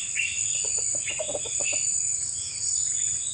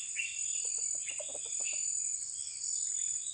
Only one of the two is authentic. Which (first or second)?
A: second